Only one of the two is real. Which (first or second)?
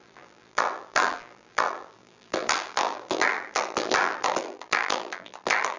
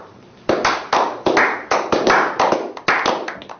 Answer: second